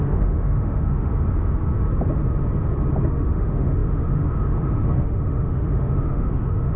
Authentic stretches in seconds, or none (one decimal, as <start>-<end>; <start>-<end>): 1.1-3.1